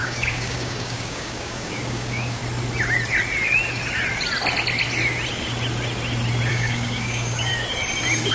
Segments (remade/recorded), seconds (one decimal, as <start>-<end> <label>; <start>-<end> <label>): 0.0-2.4 remade; 2.4-6.5 recorded; 6.5-7.5 remade; 7.5-8.3 recorded